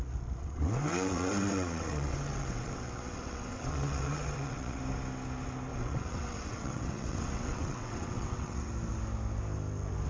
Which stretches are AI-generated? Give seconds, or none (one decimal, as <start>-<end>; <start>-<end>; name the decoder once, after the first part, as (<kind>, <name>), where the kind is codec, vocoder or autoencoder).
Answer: 0.4-4.8 (vocoder, WaveNeXt); 5.7-8.7